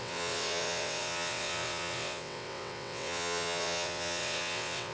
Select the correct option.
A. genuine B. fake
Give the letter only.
B